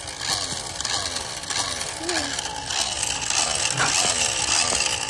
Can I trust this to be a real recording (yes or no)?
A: yes